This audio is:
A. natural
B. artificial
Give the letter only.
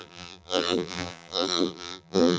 B